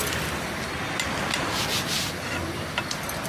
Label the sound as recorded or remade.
recorded